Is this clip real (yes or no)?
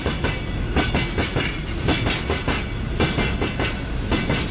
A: yes